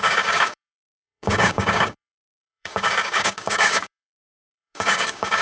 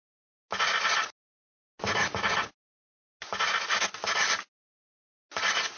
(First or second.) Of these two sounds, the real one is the second